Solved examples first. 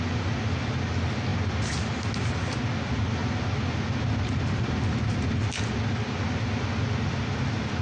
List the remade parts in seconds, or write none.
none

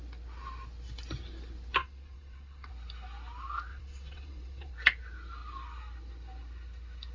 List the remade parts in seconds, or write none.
1.8-2.7 (vocoder, WaveNeXt); 3.7-4.7

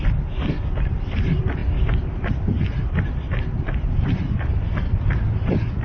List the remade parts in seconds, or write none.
none